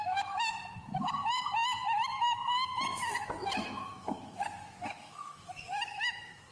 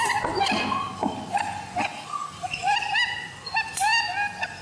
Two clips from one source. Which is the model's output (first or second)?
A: first